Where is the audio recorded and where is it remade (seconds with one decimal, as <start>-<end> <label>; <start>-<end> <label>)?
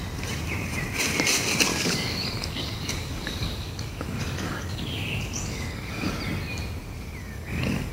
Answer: 0.0-1.7 recorded; 1.7-6.1 remade; 6.1-7.2 recorded; 7.2-7.9 remade